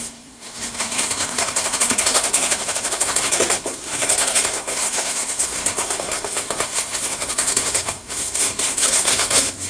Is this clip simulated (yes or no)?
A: yes